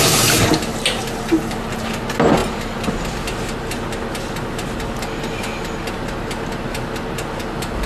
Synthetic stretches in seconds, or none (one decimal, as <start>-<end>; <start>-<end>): 0.7-1.9